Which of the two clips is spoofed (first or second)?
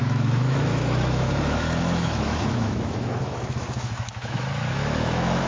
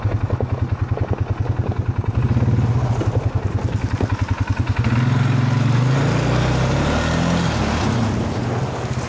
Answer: first